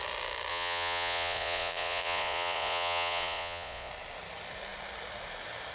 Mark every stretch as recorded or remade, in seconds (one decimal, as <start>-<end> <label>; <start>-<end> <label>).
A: 0.0-0.5 recorded; 0.5-3.9 remade; 3.9-5.7 recorded